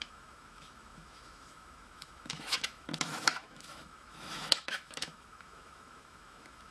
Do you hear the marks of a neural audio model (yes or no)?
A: yes